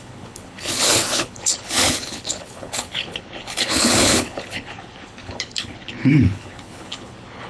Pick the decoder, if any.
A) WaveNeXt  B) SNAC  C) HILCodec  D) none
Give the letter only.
C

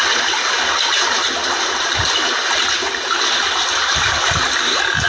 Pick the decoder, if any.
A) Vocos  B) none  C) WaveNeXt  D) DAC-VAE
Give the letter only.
B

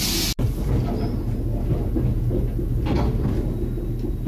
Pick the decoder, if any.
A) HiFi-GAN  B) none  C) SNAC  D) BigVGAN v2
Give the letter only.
B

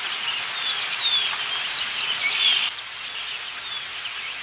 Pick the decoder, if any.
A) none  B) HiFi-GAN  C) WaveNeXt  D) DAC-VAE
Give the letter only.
A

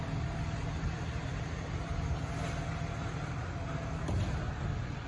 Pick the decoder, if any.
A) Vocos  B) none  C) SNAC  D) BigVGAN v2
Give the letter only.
B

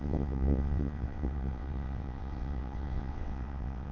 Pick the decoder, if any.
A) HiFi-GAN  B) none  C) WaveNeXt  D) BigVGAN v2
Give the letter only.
C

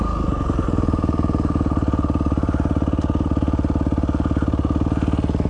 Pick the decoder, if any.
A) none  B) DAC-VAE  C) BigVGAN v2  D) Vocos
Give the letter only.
A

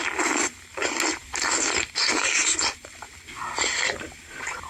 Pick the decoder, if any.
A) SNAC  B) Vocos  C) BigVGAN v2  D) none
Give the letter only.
D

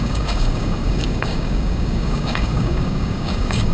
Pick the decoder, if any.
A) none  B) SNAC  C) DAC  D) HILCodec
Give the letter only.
C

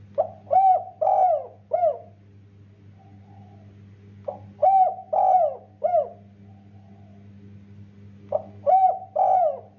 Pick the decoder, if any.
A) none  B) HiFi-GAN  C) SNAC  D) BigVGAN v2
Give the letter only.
A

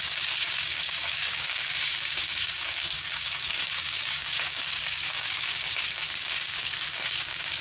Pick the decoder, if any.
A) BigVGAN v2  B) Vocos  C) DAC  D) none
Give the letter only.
C